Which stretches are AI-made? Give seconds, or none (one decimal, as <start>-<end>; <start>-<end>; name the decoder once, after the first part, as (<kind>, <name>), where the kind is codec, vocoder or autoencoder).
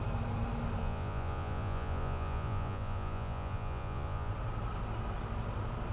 0.8-4.3 (vocoder, Vocos)